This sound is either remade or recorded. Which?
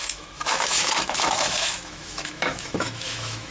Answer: remade